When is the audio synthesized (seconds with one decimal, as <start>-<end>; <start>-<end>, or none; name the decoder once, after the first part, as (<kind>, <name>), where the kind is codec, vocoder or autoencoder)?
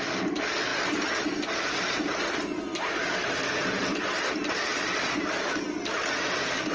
none